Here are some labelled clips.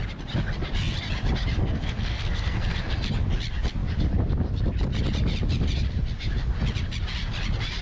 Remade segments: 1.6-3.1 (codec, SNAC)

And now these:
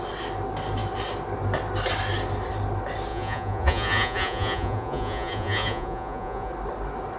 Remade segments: 3.1-6.5 (vocoder, Vocos)

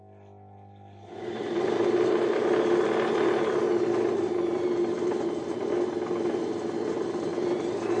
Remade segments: none

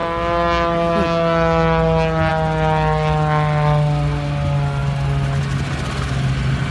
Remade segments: none

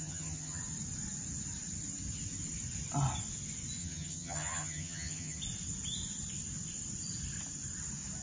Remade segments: 0.0-0.6 (vocoder, HiFi-GAN); 3.8-5.4

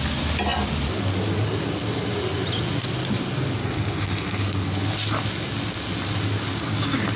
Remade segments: 3.6-4.4 (codec, SNAC)